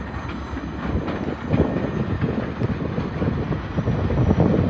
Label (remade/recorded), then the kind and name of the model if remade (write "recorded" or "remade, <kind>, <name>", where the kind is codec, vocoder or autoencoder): recorded